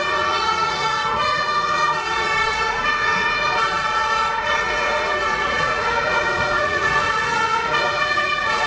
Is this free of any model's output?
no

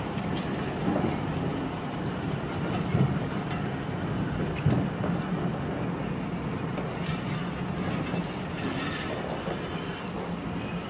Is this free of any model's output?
yes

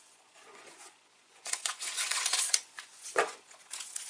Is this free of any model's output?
no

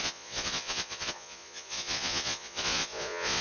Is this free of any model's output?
no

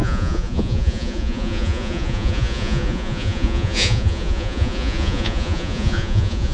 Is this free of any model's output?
no